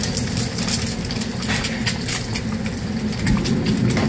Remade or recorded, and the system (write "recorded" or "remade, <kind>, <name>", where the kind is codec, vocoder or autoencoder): recorded